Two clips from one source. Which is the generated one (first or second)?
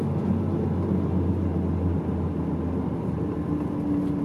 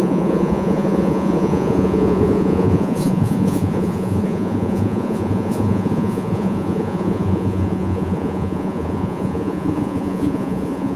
second